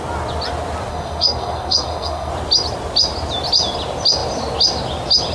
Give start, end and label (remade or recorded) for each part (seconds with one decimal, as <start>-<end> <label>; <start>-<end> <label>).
0.0-0.9 recorded; 0.9-2.3 remade; 2.3-5.3 recorded